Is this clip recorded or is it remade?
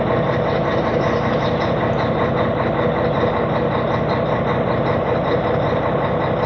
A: recorded